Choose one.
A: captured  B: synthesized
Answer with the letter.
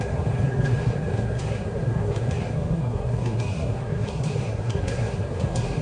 B